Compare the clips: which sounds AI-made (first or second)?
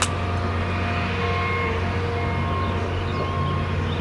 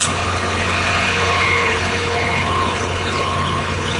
second